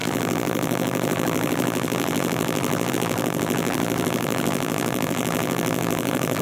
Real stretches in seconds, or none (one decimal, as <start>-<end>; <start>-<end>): none